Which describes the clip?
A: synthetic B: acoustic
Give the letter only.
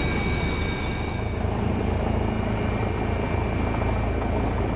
B